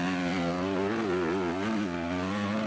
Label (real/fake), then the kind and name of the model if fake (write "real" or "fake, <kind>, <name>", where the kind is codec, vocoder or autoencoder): real